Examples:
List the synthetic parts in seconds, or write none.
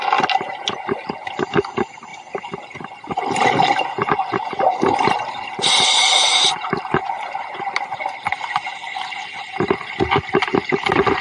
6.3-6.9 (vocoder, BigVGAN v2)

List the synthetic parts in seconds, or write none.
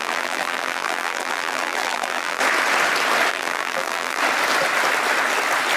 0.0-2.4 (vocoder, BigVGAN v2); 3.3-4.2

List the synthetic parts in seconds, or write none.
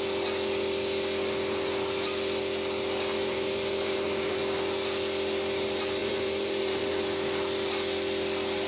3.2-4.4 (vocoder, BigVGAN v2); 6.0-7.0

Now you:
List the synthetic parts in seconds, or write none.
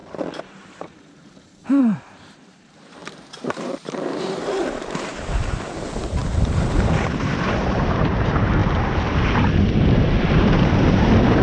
0.0-6.2 (vocoder, BigVGAN v2); 7.0-11.4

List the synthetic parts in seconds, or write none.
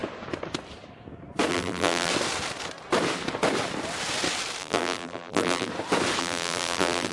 1.5-2.1 (vocoder, BigVGAN v2); 4.6-5.7; 6.2-7.1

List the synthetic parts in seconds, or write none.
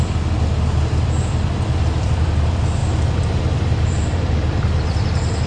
0.0-2.8 (vocoder, BigVGAN v2); 3.4-5.5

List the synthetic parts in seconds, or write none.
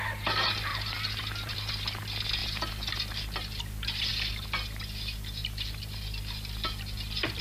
0.7-1.8 (vocoder, BigVGAN v2); 5.4-6.2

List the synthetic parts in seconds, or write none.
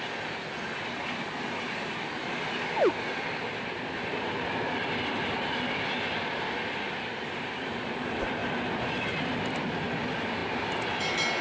none